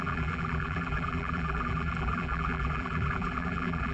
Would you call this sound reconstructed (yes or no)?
yes